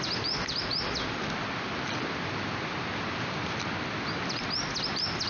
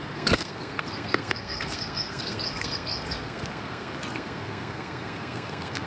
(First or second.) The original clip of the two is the first